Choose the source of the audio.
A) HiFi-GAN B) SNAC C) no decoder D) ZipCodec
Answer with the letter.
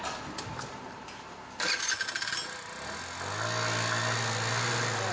C